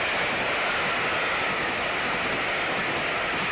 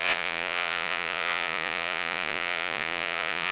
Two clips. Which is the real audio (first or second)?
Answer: first